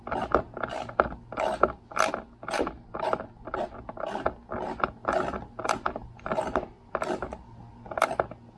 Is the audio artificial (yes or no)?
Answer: no